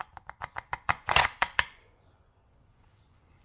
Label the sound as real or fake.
fake